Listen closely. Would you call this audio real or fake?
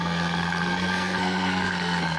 fake